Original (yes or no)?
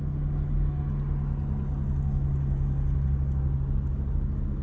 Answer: yes